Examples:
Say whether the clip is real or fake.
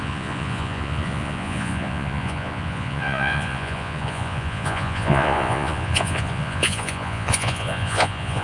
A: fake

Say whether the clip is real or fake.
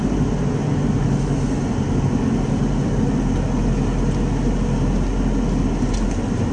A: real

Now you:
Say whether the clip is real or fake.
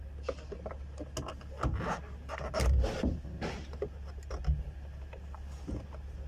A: real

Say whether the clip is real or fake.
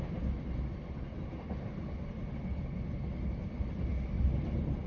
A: real